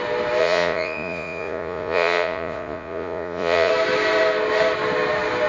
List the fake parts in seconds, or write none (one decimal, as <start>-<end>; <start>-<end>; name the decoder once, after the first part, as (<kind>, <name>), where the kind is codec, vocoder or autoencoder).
0.4-3.7 (vocoder, Vocos)